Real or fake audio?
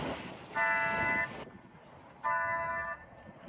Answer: real